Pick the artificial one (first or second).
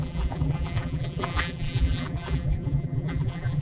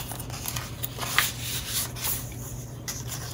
first